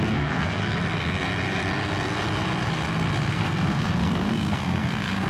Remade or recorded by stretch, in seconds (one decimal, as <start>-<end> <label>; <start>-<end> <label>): 0.0-0.6 remade; 0.6-3.3 recorded; 3.3-5.3 remade